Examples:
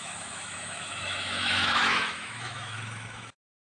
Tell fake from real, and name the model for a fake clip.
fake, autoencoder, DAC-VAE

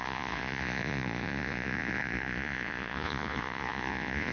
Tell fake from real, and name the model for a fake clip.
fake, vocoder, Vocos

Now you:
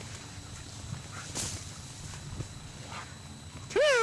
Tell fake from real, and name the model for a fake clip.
real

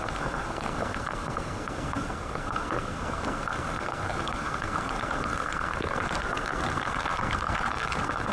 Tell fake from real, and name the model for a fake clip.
fake, codec, SNAC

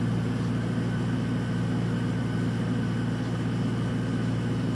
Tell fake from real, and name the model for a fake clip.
real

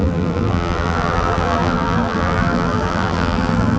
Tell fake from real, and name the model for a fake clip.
fake, vocoder, BigVGAN v2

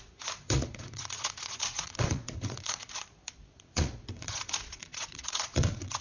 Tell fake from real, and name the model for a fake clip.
fake, vocoder, Vocos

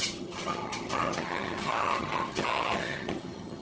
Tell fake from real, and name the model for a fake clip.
fake, vocoder, HiFi-GAN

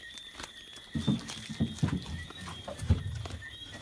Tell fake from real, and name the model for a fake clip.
fake, vocoder, BigVGAN v2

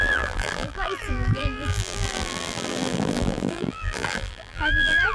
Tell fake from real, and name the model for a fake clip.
fake, vocoder, BigVGAN v2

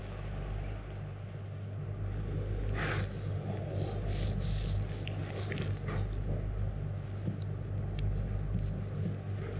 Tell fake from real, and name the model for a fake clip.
real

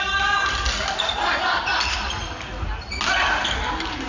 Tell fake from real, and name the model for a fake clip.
real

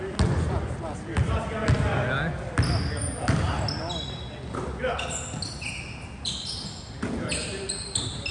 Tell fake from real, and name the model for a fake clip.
real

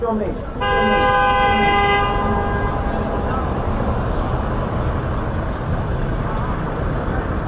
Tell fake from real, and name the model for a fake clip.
real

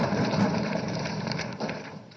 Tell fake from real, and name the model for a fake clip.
fake, vocoder, BigVGAN v2